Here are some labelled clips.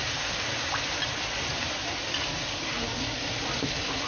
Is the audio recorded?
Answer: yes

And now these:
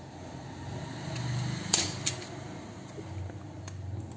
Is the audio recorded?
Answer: yes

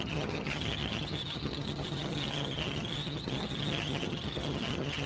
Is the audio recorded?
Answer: no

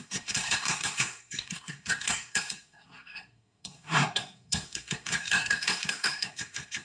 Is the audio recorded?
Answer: no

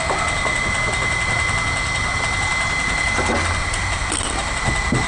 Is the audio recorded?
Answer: yes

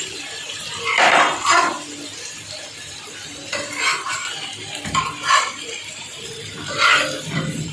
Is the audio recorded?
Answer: no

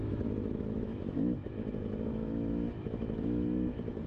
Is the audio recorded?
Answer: no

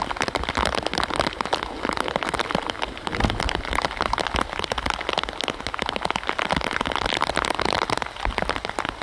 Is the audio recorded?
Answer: yes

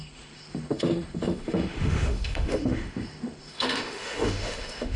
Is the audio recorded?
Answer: no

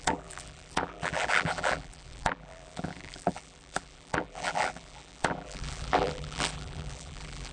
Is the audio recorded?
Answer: no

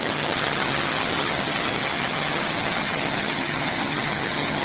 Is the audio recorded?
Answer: no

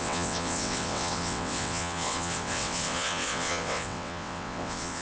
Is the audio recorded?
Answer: no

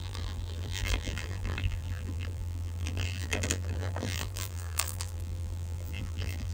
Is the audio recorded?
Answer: no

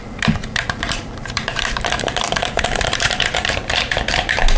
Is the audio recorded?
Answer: no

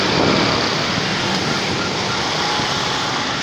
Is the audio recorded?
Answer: yes